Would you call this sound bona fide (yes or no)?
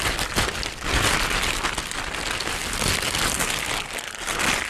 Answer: yes